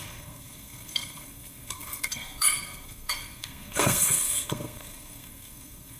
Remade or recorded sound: remade